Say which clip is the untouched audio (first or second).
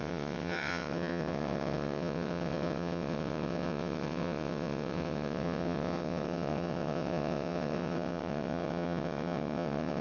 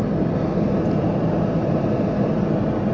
second